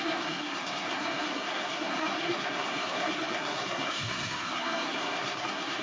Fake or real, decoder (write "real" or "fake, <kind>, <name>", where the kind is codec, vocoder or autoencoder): fake, codec, SNAC